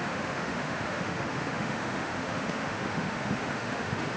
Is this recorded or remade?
remade